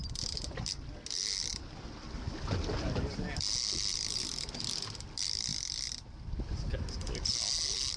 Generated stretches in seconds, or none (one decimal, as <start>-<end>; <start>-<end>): none